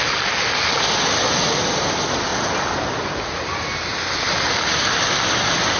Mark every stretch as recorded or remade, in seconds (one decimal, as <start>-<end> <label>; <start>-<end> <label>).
0.0-5.8 recorded